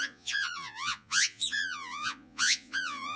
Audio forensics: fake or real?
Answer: fake